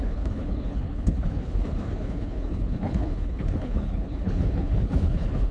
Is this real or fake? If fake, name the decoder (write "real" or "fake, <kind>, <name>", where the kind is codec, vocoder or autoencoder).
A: fake, codec, HILCodec